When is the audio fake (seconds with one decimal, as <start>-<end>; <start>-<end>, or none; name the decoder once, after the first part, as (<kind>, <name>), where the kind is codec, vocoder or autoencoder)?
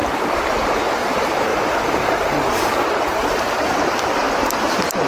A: 0.0-4.2 (vocoder, BigVGAN v2)